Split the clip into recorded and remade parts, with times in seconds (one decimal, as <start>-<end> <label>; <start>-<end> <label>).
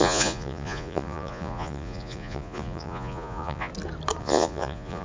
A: 0.0-3.7 remade; 3.7-4.2 recorded; 4.2-5.0 remade